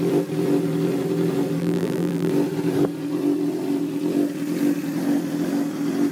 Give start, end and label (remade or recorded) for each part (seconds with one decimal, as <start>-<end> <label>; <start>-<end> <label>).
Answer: 0.0-1.6 recorded; 1.6-2.3 remade; 2.3-6.1 recorded

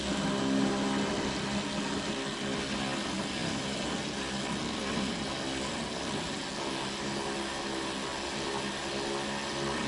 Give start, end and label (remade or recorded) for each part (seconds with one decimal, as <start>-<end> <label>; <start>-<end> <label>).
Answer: 0.0-9.9 recorded